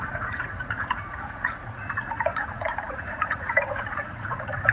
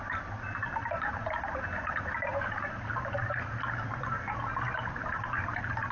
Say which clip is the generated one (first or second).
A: first